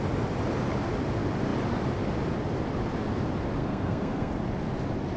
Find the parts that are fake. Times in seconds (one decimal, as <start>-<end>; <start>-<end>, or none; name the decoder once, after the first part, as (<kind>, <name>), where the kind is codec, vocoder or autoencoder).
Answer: 3.6-4.3 (codec, SNAC)